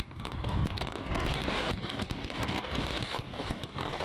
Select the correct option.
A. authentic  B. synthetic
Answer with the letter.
B